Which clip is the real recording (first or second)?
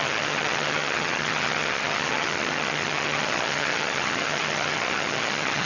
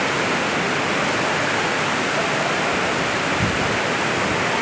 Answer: second